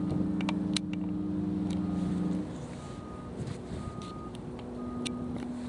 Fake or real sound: real